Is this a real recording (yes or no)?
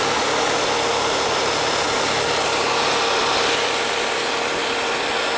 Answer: yes